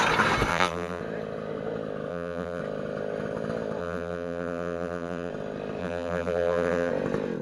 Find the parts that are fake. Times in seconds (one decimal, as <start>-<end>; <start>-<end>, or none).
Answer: 0.5-1.0; 2.1-2.6; 3.8-5.3; 5.8-6.9